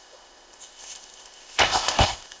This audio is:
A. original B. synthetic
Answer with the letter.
B